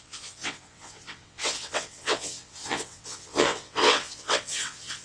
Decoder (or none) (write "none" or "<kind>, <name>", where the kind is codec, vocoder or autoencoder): vocoder, WaveNeXt